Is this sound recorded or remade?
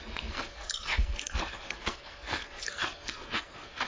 remade